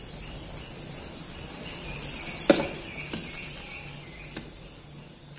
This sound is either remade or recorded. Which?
recorded